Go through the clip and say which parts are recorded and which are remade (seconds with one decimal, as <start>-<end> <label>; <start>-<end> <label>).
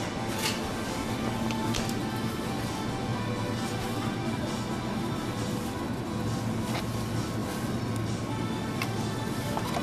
0.0-9.8 recorded